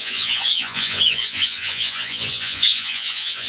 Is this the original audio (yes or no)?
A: no